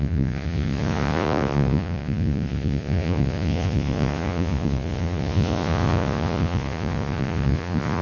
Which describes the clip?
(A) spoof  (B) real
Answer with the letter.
A